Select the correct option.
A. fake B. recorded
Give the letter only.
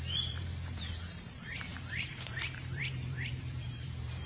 A